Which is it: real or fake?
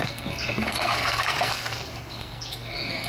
fake